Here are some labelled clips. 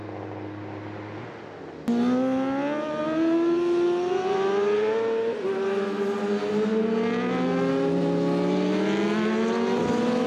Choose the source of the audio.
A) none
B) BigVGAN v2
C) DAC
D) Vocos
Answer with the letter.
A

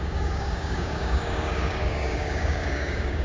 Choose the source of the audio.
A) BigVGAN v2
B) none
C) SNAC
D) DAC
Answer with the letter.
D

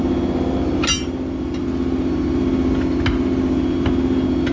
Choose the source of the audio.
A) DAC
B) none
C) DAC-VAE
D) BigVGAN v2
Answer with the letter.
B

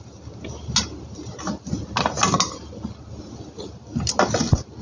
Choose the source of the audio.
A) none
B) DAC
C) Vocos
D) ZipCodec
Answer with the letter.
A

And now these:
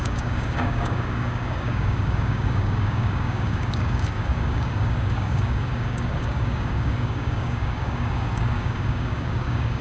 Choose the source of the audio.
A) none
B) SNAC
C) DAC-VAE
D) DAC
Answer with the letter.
D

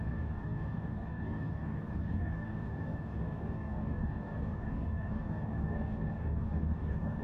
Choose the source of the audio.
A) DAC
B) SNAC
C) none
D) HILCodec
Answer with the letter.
A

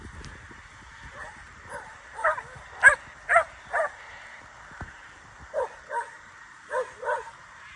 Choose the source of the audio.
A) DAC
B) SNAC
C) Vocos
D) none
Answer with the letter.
D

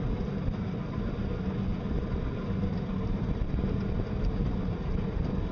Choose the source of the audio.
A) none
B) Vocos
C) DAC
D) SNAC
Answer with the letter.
A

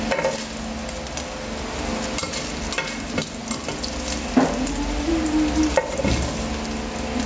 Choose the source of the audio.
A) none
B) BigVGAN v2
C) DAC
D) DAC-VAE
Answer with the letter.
A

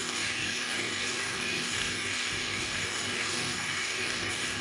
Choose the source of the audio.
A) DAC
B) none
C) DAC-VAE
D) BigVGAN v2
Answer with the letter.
A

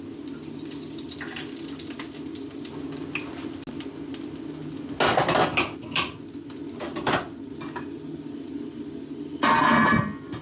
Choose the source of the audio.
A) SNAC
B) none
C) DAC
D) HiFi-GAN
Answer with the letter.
B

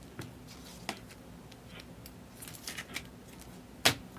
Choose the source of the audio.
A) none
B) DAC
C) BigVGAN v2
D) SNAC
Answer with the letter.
A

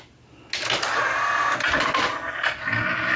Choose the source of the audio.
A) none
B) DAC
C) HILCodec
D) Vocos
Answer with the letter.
A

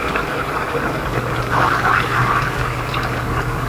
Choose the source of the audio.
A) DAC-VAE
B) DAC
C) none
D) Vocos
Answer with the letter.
B